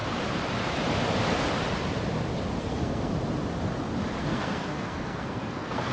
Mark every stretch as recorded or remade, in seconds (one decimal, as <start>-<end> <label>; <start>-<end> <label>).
0.0-2.6 recorded; 2.6-3.1 remade; 3.1-4.2 recorded; 4.2-5.9 remade